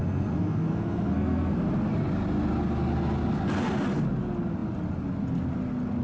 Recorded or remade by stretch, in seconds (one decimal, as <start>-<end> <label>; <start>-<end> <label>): 0.0-1.6 remade; 1.6-6.0 recorded